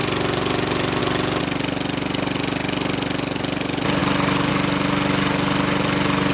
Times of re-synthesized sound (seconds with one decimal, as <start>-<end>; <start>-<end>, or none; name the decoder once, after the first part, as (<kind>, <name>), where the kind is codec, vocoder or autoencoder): none